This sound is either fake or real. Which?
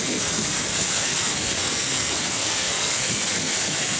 fake